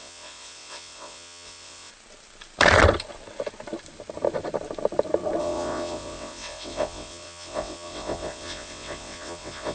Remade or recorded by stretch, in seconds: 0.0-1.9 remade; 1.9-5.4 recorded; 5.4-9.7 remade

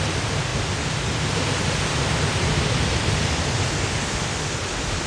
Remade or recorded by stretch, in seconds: 0.0-5.1 recorded

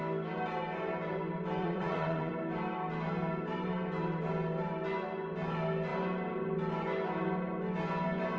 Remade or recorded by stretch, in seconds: 0.0-1.6 recorded; 1.6-2.3 remade; 2.3-8.4 recorded

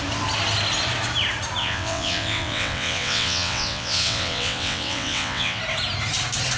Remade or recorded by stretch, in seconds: 0.0-1.6 recorded; 1.6-5.6 remade; 5.6-6.6 recorded